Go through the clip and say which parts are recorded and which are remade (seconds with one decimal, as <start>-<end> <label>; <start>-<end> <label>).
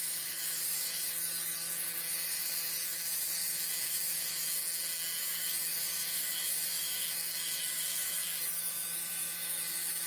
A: 0.0-4.6 remade; 4.6-5.2 recorded; 5.2-10.1 remade